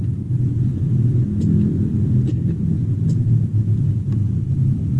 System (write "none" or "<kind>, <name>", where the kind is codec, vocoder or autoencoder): vocoder, BigVGAN v2